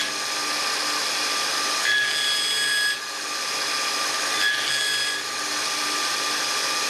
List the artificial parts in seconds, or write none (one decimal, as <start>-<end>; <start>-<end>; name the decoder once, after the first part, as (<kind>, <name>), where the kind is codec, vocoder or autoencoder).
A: none